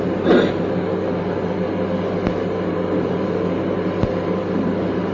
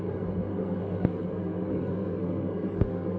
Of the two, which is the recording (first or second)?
first